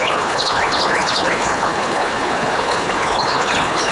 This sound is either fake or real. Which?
fake